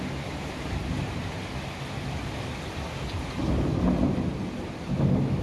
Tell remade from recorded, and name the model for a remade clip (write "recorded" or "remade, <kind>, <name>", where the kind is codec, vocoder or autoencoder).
recorded